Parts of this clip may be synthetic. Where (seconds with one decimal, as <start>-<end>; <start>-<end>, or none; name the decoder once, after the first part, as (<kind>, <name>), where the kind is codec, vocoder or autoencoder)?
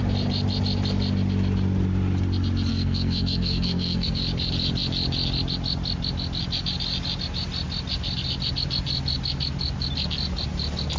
2.7-4.2 (codec, SNAC)